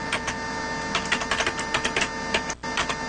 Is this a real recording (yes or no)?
yes